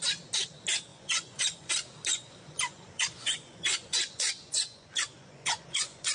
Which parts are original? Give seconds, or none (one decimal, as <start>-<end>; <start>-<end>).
0.0-0.9; 1.7-2.1